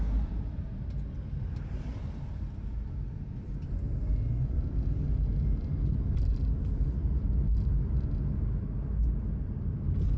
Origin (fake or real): real